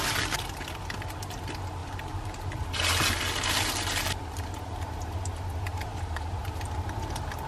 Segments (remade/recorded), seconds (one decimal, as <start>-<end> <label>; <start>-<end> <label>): 0.0-1.8 recorded; 1.8-2.5 remade; 2.5-5.7 recorded; 5.7-6.5 remade; 6.5-7.5 recorded